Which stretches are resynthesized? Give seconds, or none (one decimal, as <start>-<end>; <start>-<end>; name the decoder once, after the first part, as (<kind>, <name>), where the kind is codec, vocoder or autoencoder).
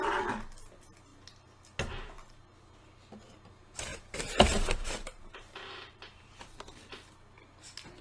3.9-6.4 (vocoder, BigVGAN v2)